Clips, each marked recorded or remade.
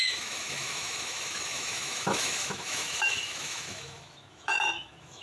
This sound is remade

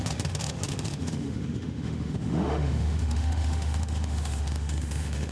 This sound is remade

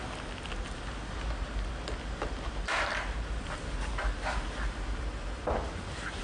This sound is recorded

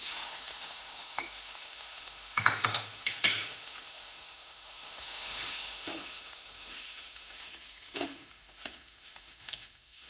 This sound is remade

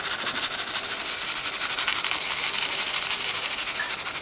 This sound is recorded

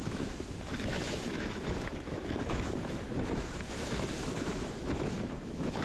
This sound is remade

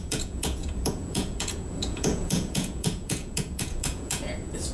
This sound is remade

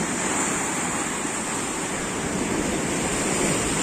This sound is recorded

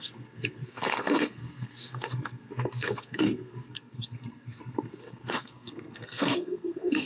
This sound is remade